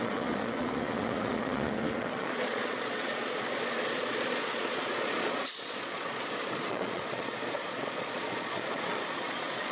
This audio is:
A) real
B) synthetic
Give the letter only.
B